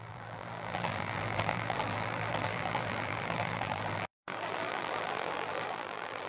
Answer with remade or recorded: remade